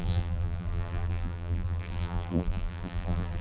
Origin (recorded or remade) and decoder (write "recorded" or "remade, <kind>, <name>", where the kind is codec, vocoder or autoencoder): remade, vocoder, BigVGAN v2